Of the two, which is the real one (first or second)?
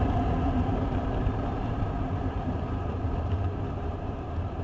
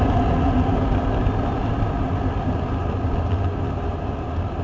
second